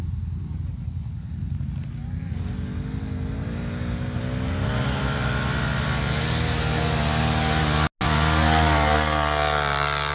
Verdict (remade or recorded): recorded